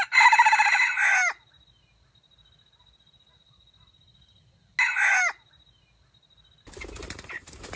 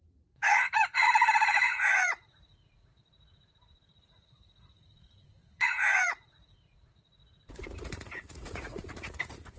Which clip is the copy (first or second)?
second